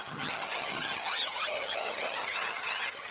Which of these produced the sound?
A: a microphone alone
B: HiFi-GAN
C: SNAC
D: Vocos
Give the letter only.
B